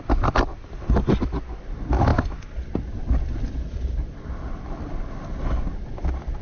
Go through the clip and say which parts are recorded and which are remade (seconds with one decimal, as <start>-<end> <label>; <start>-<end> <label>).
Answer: 0.0-6.4 recorded